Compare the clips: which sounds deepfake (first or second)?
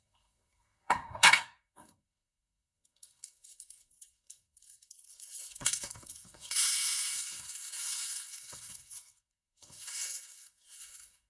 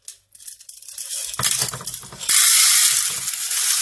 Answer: first